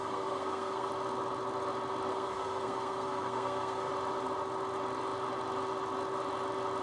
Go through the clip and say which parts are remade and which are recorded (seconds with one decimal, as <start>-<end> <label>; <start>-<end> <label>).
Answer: 0.0-0.9 remade; 0.9-2.1 recorded; 2.1-3.9 remade; 3.9-6.8 recorded